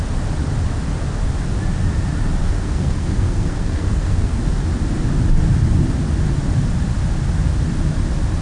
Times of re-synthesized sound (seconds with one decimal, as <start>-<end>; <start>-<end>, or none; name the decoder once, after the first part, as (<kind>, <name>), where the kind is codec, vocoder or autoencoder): 2.4-4.4 (codec, SNAC)